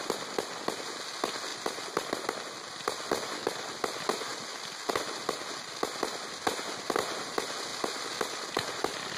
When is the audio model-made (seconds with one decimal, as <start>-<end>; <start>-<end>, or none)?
1.5-2.3